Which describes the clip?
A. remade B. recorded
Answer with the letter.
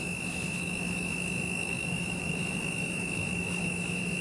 A